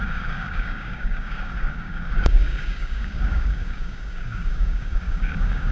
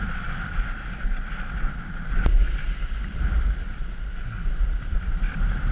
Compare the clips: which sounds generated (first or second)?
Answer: first